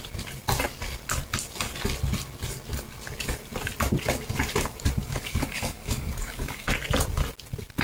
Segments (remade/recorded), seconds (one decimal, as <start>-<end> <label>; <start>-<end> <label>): 0.0-5.0 recorded; 5.0-6.7 remade; 6.7-7.8 recorded